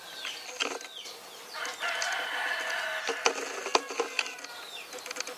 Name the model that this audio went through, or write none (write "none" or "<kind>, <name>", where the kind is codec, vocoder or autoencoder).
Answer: none